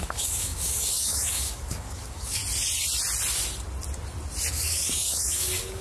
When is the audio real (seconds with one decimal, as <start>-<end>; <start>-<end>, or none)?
2.4-4.5